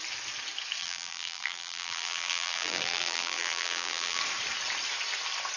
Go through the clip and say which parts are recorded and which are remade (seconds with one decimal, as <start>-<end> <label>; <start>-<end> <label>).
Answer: 0.0-0.8 recorded; 0.8-4.2 remade; 4.2-5.6 recorded